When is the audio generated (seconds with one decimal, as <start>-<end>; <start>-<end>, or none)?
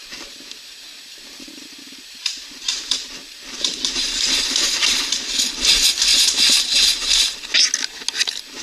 0.0-5.0; 6.1-7.4